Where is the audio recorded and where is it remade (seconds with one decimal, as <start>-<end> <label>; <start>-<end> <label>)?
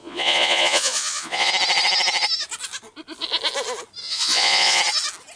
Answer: 0.0-1.5 remade; 1.5-4.0 recorded; 4.0-4.8 remade; 4.8-5.4 recorded